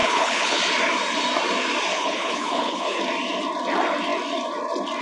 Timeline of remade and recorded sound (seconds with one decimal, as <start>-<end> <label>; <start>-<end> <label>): 0.0-0.6 remade; 0.6-1.9 recorded; 1.9-3.0 remade; 3.0-5.0 recorded